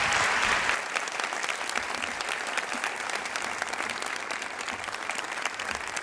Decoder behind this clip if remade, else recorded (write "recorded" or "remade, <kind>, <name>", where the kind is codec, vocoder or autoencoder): recorded